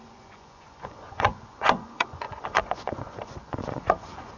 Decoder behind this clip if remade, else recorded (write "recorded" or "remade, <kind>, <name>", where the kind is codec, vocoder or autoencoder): remade, vocoder, Vocos